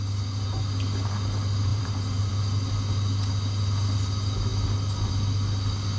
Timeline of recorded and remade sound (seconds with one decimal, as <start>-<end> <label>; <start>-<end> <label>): 0.0-1.7 recorded; 1.7-2.3 remade; 2.3-6.0 recorded